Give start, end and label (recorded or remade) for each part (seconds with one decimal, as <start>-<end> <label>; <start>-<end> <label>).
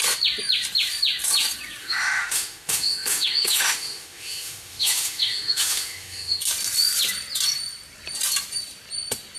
0.0-1.8 recorded; 1.8-6.4 remade; 6.4-9.4 recorded